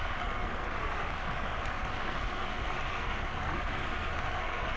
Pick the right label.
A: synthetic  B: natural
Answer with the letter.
A